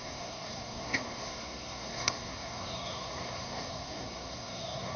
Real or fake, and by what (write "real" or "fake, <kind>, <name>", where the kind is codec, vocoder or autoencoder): fake, codec, SNAC